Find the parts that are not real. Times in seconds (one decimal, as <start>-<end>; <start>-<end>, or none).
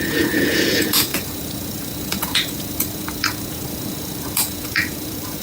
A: 0.0-5.4